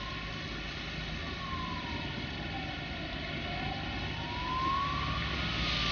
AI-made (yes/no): no